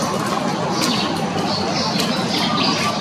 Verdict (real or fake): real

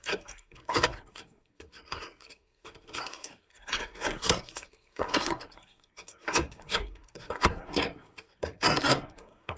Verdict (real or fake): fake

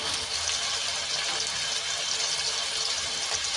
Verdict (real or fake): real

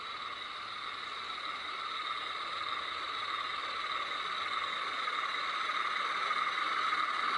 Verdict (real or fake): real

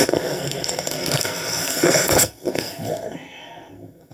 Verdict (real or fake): fake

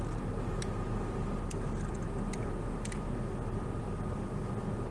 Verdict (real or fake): real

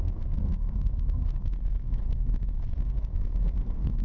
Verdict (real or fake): fake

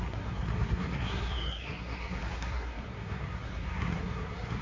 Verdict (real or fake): fake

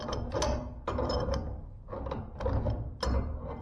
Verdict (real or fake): real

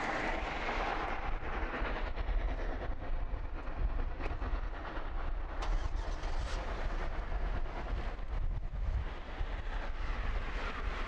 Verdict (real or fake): real